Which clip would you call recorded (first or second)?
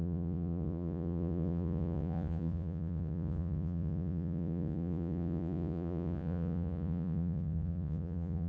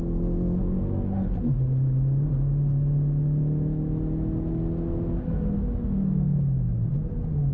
second